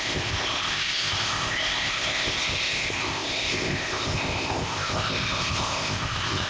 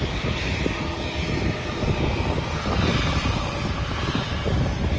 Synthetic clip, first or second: first